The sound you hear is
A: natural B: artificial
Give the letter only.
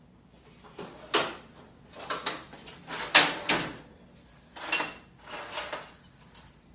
A